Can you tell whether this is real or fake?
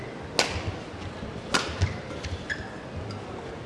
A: real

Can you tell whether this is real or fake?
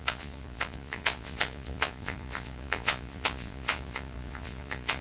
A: fake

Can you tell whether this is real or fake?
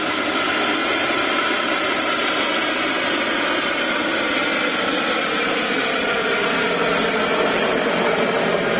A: real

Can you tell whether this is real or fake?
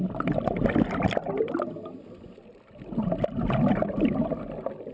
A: real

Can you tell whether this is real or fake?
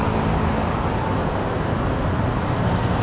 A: real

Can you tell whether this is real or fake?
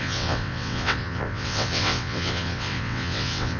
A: fake